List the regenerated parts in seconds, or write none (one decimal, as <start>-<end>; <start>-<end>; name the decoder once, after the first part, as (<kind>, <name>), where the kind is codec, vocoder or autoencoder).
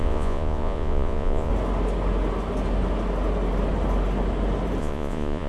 0.0-1.5 (vocoder, Vocos); 4.8-5.5